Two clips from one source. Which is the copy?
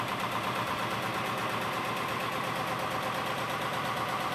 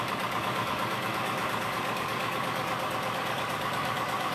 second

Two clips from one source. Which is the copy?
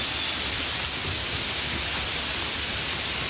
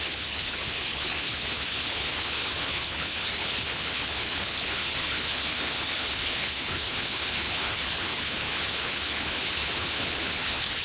second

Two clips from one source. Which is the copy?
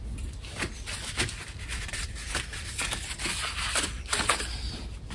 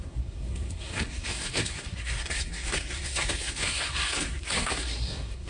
second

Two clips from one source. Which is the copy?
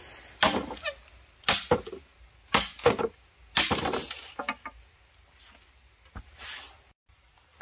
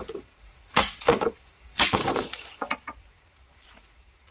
second